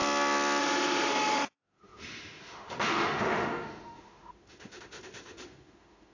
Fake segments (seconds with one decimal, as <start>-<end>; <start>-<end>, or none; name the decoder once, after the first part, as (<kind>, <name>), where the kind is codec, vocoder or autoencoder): 0.6-6.1 (autoencoder, DAC-VAE)